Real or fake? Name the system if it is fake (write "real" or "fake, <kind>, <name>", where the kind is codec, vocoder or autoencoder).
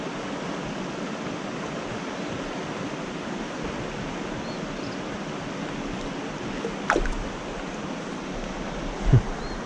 real